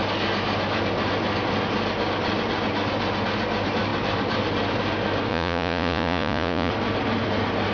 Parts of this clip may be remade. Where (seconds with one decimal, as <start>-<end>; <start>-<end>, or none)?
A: 5.3-6.7